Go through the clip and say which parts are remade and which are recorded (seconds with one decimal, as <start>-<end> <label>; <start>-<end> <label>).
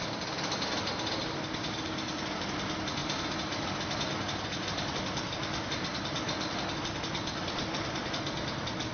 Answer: 0.0-8.9 recorded